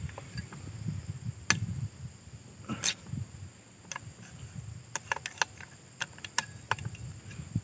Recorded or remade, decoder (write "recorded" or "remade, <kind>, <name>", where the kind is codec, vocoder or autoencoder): recorded